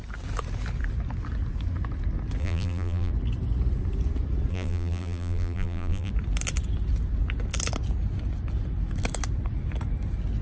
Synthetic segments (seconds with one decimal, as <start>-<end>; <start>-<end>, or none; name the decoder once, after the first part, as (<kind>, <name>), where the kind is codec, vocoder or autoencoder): 2.4-3.1 (vocoder, BigVGAN v2); 4.5-6.1